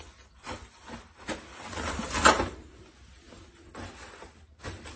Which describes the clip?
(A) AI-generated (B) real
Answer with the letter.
B